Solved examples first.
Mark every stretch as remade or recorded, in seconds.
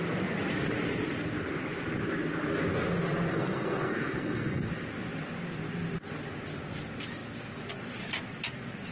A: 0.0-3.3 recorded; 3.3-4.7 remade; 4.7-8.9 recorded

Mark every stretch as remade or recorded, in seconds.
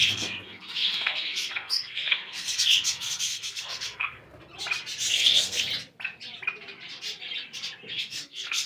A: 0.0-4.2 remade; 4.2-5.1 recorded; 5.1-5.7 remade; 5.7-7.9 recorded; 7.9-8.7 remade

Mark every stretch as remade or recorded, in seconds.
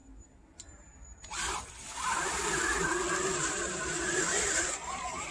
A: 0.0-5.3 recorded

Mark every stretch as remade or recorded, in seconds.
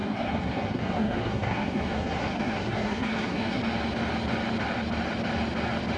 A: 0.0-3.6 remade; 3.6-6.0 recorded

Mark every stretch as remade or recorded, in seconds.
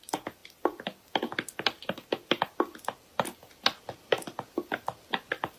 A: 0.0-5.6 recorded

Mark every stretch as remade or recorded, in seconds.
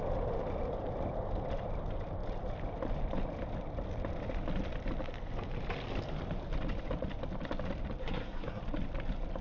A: 0.0-8.0 recorded; 8.0-8.6 remade; 8.6-9.4 recorded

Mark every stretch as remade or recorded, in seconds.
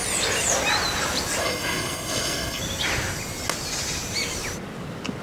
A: 0.0-1.4 recorded; 1.4-2.6 remade; 2.6-5.2 recorded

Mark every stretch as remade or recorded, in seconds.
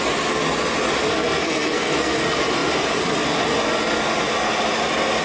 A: 0.0-1.1 recorded; 1.1-2.2 remade; 2.2-5.2 recorded